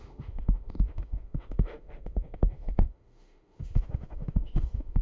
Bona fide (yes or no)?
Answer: no